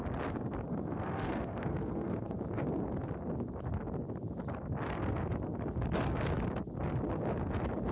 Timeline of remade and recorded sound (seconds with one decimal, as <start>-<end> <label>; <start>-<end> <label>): 0.0-0.7 recorded; 0.7-2.4 remade; 2.4-7.9 recorded